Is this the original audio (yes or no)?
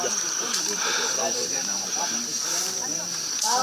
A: no